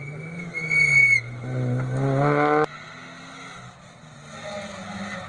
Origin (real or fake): real